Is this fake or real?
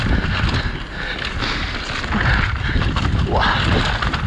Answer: real